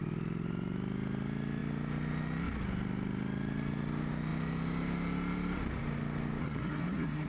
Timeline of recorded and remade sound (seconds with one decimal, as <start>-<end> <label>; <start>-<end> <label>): 0.0-6.4 recorded; 6.4-7.3 remade